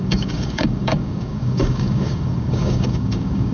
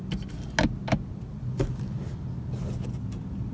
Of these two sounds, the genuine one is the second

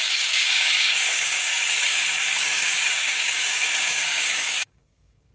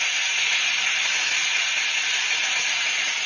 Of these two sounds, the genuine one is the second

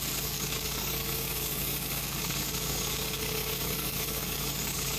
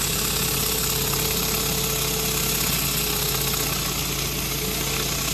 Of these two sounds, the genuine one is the second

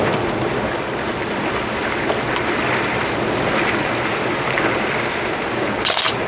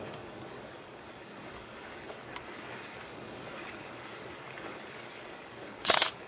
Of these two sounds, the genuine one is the first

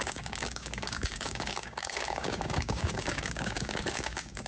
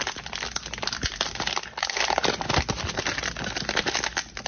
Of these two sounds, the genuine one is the second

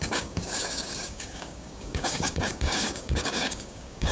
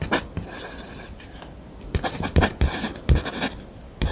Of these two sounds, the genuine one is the second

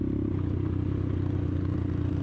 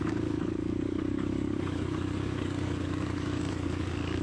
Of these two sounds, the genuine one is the first